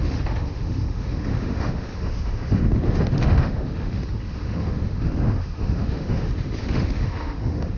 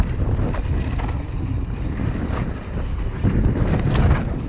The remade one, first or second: first